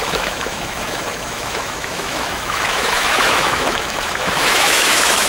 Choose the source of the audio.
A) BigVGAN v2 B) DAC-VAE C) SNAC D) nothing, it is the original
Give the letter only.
B